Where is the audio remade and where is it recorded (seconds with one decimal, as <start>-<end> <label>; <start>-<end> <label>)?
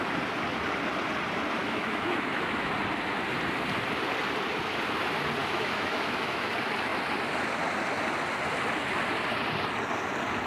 0.0-1.6 recorded; 1.6-2.7 remade; 2.7-5.4 recorded; 5.4-6.5 remade; 6.5-10.5 recorded